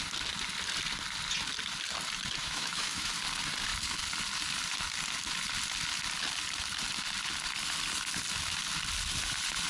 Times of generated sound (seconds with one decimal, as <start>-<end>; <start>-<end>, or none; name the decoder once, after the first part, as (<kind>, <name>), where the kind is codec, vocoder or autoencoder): 2.4-3.1 (autoencoder, DAC-VAE)